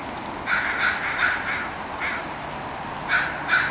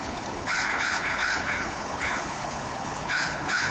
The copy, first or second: second